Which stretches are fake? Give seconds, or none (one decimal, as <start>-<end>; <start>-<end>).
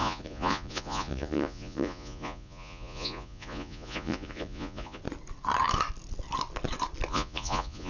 0.0-5.0; 7.1-7.9